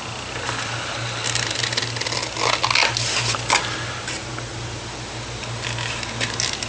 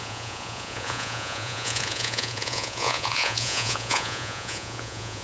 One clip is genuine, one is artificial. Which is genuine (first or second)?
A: first